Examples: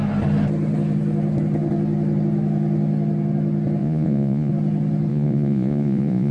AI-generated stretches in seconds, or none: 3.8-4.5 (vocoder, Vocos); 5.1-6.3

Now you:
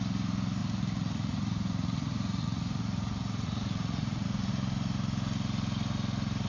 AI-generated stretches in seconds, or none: 0.6-4.5 (vocoder, Vocos)

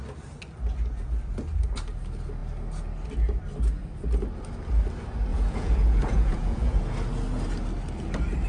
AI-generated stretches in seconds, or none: 5.3-6.8 (vocoder, Vocos)